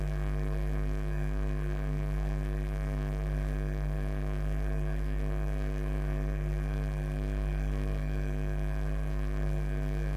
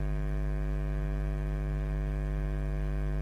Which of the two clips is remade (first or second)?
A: first